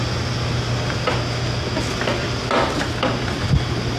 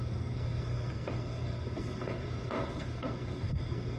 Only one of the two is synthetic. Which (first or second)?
second